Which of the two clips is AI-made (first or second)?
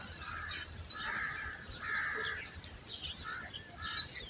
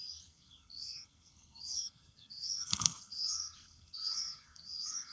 second